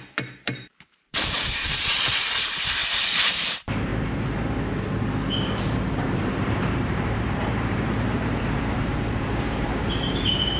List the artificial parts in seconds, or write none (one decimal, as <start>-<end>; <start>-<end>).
0.0-3.9; 5.9-10.6